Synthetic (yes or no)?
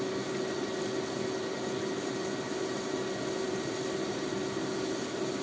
no